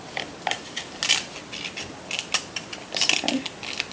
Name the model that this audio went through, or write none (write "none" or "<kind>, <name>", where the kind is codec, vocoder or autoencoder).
none